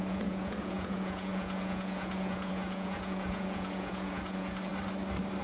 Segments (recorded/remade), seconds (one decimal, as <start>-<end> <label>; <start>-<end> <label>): 0.0-4.7 remade; 4.7-5.4 recorded